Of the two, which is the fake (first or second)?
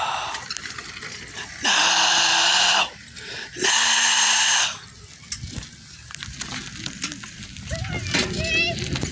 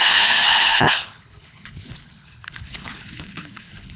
second